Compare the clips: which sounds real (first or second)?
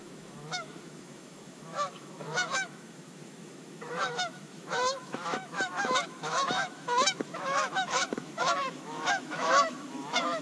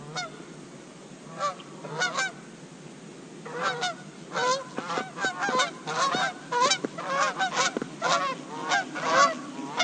second